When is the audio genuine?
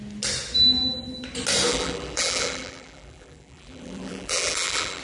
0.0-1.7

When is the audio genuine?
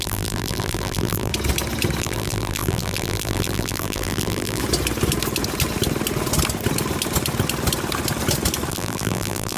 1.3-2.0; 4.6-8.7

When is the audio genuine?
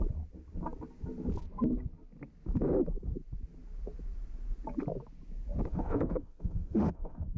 0.0-5.7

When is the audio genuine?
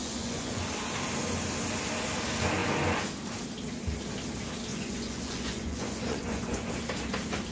0.7-4.7; 6.7-7.5